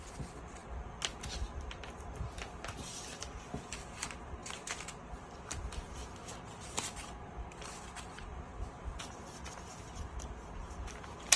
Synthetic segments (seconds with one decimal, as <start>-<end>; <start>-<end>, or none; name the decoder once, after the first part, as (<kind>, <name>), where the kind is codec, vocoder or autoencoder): 4.4-5.9 (vocoder, BigVGAN v2); 8.3-9.0